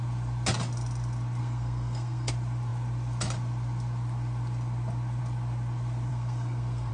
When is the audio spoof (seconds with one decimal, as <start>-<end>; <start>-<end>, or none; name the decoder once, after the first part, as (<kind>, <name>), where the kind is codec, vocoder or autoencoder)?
1.4-2.3 (codec, SNAC); 6.1-6.9